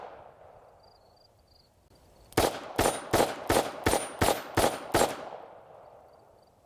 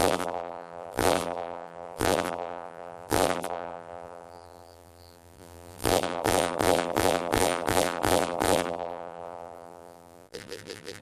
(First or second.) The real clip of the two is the first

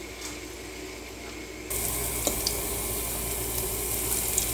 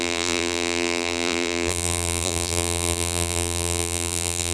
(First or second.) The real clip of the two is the first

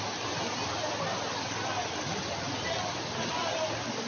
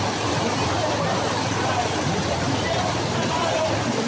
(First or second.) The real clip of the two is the first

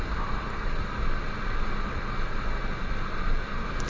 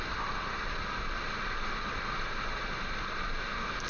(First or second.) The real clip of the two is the first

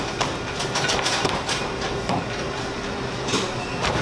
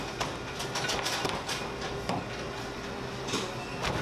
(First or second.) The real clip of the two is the second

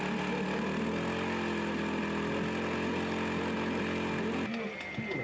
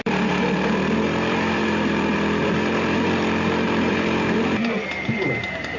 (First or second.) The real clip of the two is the first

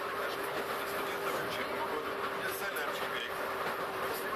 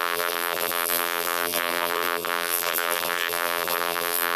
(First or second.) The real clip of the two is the first